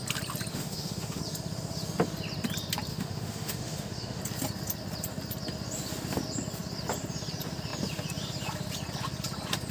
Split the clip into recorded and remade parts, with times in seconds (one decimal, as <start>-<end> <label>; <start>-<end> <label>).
0.0-0.5 recorded; 0.5-1.2 remade; 1.2-2.9 recorded; 2.9-4.2 remade; 4.2-9.7 recorded